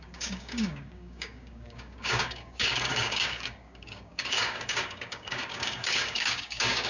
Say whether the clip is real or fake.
fake